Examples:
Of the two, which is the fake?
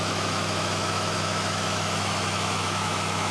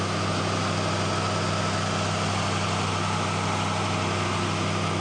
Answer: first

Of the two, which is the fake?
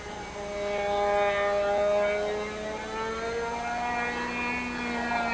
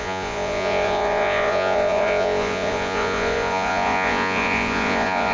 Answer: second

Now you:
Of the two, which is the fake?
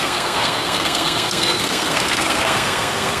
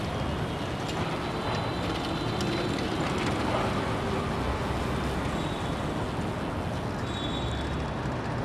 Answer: first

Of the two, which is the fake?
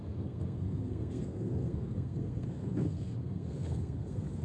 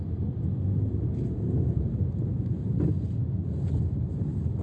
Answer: first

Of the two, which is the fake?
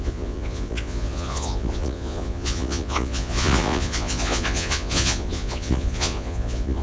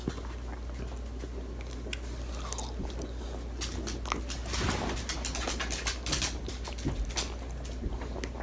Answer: first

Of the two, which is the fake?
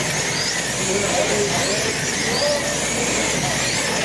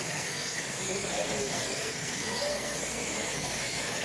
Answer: second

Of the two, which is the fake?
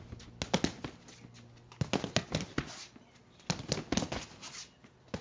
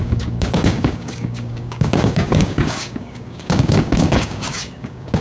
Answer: second